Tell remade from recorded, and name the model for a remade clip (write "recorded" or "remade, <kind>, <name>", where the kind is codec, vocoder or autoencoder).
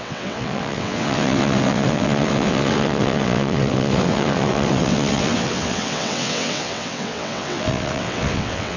remade, vocoder, WaveNeXt